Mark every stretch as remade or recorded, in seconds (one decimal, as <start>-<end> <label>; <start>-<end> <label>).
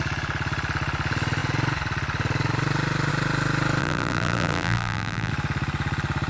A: 0.0-3.8 recorded; 3.8-5.3 remade; 5.3-6.3 recorded